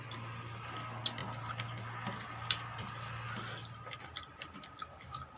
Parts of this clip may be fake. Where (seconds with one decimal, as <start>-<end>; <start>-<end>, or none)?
1.2-4.4